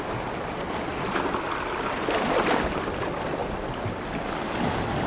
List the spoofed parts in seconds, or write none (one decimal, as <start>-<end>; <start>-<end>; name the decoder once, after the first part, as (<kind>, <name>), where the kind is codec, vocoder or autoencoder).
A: none